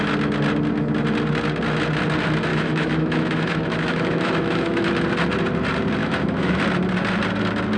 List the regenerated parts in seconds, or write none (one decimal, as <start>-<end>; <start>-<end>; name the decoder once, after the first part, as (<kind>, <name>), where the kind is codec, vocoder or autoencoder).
2.5-4.9 (autoencoder, DAC-VAE); 6.0-6.6